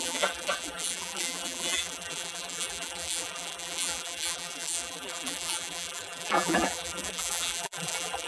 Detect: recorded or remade remade